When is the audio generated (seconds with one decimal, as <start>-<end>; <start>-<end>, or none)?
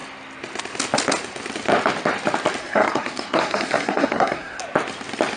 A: 2.6-4.6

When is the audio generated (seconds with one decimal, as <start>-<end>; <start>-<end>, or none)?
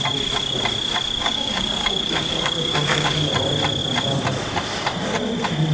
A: 1.2-3.3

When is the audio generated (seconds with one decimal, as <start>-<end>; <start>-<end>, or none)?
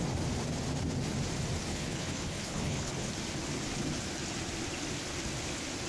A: 1.7-3.1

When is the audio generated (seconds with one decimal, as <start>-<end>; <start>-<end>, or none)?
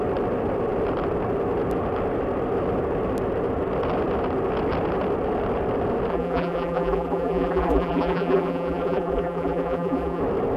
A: 6.1-10.2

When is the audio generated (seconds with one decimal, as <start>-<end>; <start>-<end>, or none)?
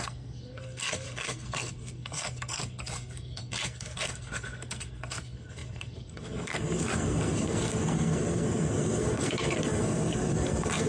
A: 0.0-10.9